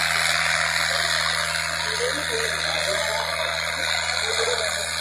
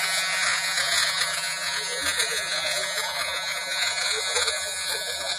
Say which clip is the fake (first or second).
second